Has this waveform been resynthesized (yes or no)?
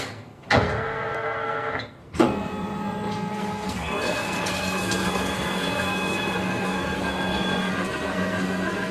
yes